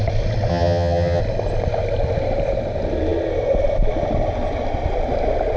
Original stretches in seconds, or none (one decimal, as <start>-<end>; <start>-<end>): 0.0-0.5; 1.2-5.6